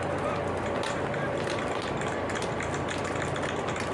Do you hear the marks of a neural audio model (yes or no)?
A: no